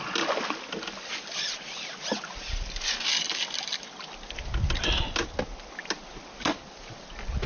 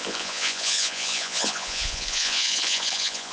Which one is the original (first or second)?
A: first